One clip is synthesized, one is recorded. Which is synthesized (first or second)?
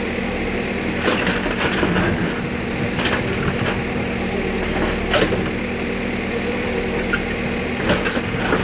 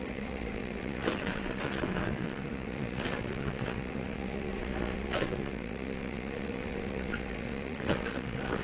second